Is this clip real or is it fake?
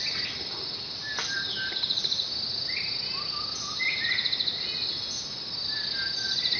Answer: real